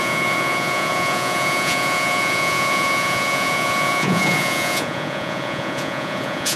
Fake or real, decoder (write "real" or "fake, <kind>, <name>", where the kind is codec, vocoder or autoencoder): fake, vocoder, Vocos